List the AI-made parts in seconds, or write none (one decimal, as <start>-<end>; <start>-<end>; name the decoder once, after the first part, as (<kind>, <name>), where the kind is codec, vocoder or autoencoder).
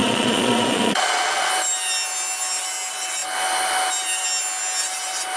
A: 0.0-1.5 (vocoder, Vocos)